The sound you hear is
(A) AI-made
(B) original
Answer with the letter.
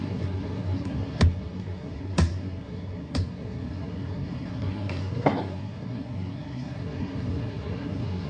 A